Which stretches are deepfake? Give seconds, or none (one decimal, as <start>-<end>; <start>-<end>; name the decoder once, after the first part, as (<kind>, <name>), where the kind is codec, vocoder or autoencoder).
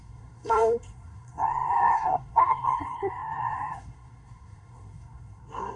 0.0-5.8 (codec, SNAC)